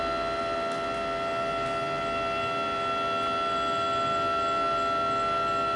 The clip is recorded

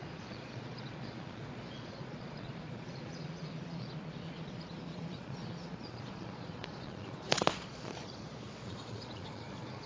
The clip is remade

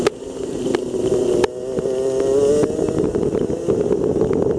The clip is recorded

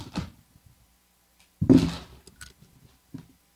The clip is recorded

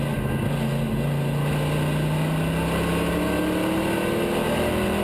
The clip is recorded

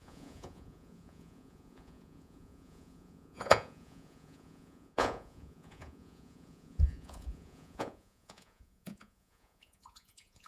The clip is remade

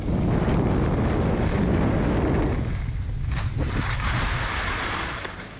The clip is recorded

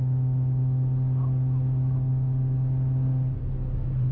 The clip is recorded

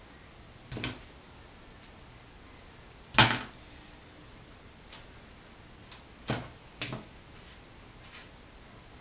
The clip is recorded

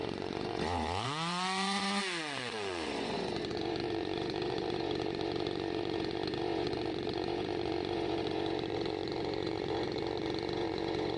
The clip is remade